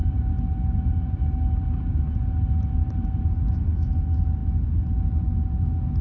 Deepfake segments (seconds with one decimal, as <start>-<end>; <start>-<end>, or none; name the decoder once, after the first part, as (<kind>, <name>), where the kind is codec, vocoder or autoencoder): none